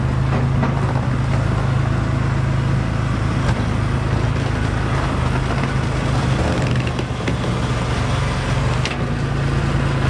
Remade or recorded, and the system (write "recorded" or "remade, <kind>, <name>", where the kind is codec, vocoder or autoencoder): recorded